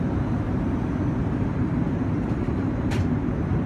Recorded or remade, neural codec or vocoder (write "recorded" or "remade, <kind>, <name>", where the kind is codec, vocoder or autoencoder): remade, vocoder, BigVGAN v2